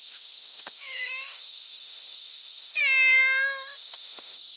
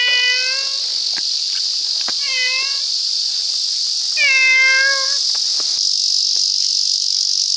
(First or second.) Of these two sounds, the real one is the second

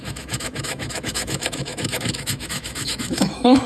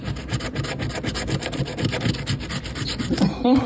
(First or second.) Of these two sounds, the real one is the second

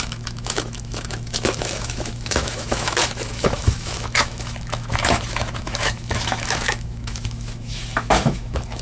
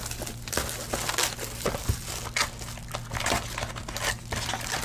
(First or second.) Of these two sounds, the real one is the second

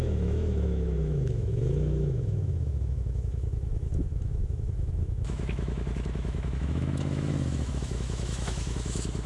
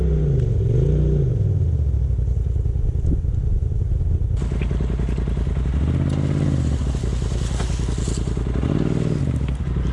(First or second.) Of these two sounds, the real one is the second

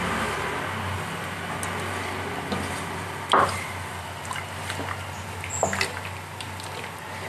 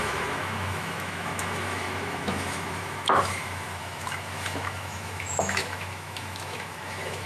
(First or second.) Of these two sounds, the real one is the first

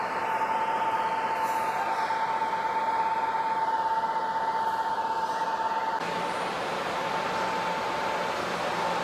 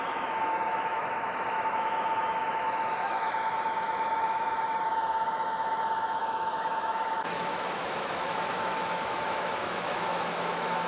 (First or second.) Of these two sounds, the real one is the first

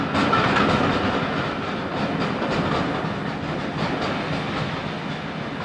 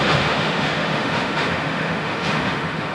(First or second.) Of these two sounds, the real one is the first